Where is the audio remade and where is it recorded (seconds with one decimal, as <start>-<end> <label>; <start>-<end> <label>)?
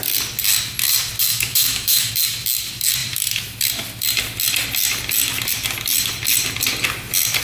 0.0-1.3 recorded; 1.3-2.1 remade; 2.1-7.4 recorded